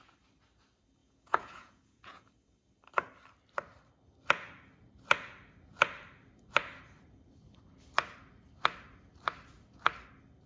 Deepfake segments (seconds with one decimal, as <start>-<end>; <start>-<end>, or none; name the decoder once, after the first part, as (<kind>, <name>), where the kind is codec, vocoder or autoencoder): 1.0-2.3 (vocoder, Vocos)